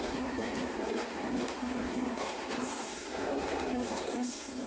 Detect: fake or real fake